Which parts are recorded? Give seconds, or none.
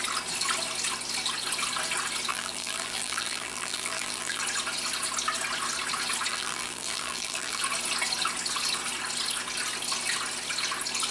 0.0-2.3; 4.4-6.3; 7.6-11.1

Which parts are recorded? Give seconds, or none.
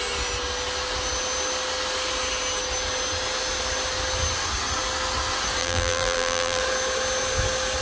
0.0-5.6; 6.6-7.8